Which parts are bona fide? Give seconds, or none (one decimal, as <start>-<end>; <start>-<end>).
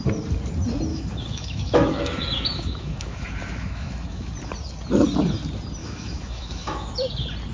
0.0-0.9; 4.3-5.8; 6.9-7.5